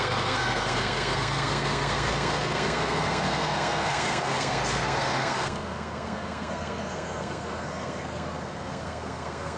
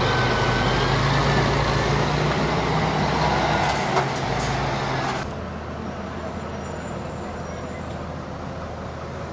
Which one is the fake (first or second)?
first